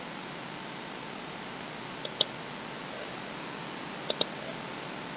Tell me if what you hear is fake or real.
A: real